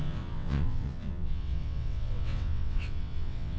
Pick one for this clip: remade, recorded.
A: remade